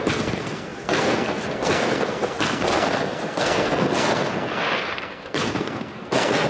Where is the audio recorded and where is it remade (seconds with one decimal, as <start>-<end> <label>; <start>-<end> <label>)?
0.0-6.5 remade